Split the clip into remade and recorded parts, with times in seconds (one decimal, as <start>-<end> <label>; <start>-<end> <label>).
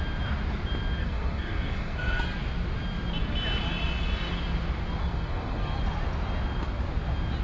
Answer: 0.0-1.0 recorded; 1.0-2.2 remade; 2.2-5.0 recorded; 5.0-5.8 remade; 5.8-7.4 recorded